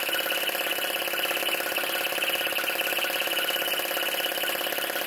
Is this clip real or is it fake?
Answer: real